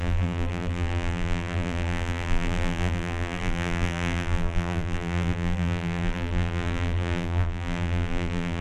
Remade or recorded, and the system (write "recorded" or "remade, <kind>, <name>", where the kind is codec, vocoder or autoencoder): remade, vocoder, BigVGAN v2